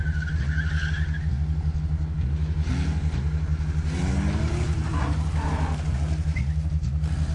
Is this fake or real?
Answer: real